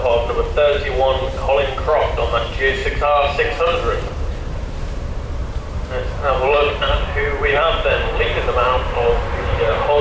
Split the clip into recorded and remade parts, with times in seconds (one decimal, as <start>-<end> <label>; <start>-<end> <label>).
0.0-10.0 remade